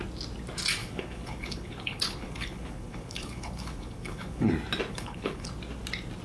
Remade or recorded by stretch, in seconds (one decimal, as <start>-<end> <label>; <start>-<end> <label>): 0.0-0.8 recorded; 0.8-4.5 remade; 4.5-4.9 recorded; 4.9-5.5 remade; 5.5-6.2 recorded